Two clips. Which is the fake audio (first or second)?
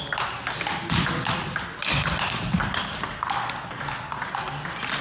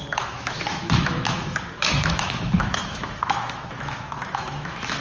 second